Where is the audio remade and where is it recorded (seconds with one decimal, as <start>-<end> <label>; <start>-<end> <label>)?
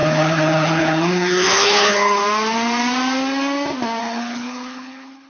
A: 0.0-2.2 remade; 2.2-4.0 recorded; 4.0-5.3 remade